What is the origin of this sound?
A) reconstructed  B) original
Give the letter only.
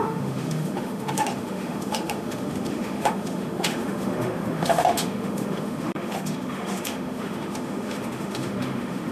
A